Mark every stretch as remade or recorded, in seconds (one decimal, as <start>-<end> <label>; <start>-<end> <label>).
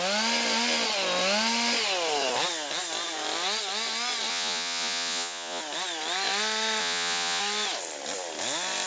0.0-4.3 recorded; 4.3-5.6 remade; 5.6-6.8 recorded; 6.8-7.4 remade; 7.4-8.9 recorded